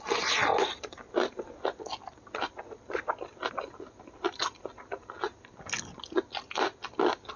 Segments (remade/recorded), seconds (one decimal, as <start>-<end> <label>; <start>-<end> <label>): 0.0-7.4 recorded